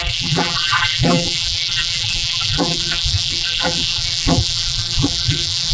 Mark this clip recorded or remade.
remade